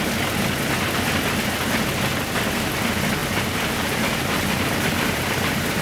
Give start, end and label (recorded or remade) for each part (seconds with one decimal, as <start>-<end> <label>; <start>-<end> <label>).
0.0-3.2 recorded; 3.2-5.8 remade